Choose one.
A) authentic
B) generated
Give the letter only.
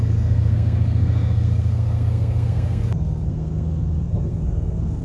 B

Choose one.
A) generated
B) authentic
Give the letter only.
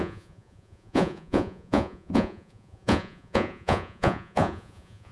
A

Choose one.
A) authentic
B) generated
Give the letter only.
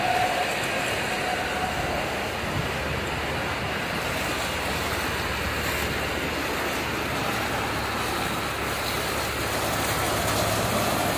A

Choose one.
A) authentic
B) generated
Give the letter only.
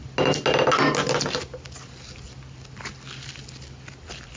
A